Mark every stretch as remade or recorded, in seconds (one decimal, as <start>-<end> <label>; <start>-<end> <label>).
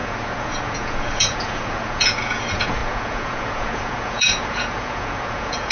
0.0-5.7 remade